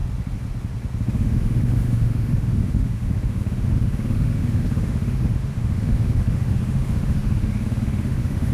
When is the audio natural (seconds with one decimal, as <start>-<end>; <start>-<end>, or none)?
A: 0.0-1.0